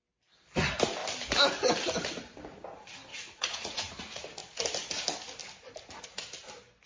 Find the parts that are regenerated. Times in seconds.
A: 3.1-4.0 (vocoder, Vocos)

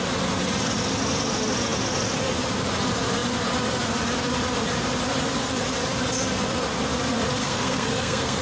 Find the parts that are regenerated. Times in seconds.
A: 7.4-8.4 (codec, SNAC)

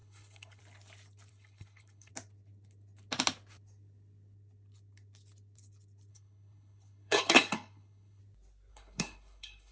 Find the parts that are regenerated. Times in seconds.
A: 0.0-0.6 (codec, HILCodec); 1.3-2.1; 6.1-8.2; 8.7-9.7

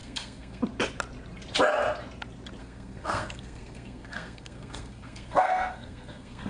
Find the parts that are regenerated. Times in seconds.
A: 0.0-0.6 (codec, SNAC); 2.6-6.5

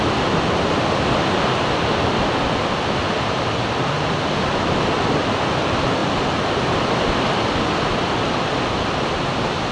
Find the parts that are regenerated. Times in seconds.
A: 6.0-6.5 (vocoder, BigVGAN v2)

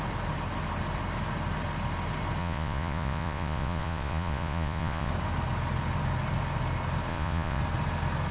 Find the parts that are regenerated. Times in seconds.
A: 2.4-5.1 (vocoder, Vocos); 7.1-7.6

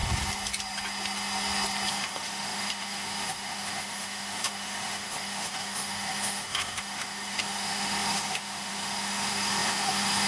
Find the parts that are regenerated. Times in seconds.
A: 1.9-10.3 (autoencoder, DAC-VAE)

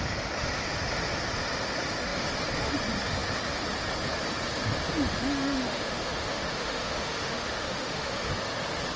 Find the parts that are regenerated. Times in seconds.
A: 5.1-8.3 (autoencoder, DAC-VAE)